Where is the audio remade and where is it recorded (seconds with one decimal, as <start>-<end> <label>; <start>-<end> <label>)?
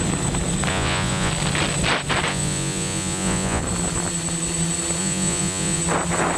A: 0.0-0.7 recorded; 0.7-1.3 remade; 1.3-2.3 recorded; 2.3-3.6 remade; 3.6-5.0 recorded; 5.0-5.8 remade; 5.8-6.4 recorded